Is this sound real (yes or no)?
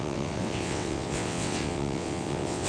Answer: no